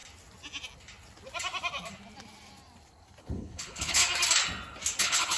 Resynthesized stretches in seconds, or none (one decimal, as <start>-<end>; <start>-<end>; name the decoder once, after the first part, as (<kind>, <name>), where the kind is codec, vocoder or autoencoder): 3.2-4.0 (codec, HILCodec); 5.0-5.4